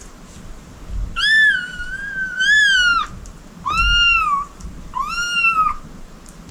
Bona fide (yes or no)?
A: yes